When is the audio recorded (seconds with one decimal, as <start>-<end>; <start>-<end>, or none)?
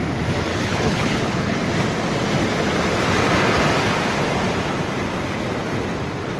0.0-0.5; 1.6-6.4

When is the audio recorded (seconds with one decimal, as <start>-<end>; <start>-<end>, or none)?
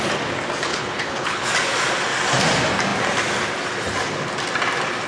0.0-0.7; 1.5-5.1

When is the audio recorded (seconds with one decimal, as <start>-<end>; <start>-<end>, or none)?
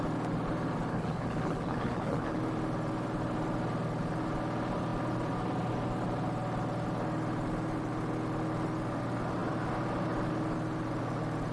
0.0-0.9; 2.4-11.5